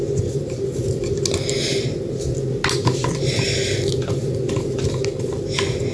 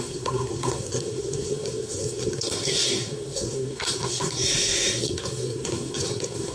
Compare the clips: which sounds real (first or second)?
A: first